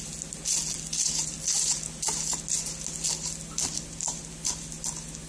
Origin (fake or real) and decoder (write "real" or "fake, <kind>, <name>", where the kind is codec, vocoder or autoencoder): real